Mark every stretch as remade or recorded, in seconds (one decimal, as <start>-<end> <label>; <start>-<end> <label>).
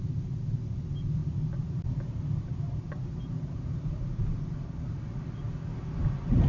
0.0-1.2 recorded; 1.2-5.1 remade; 5.1-5.7 recorded; 5.7-6.5 remade